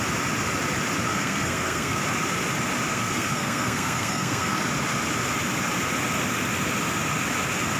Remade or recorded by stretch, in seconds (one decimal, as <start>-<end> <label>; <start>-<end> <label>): 0.0-1.1 recorded; 1.1-2.0 remade; 2.0-2.9 recorded; 2.9-4.6 remade; 4.6-7.8 recorded